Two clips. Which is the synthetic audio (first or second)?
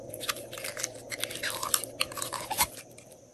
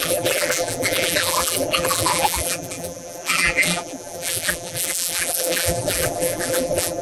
second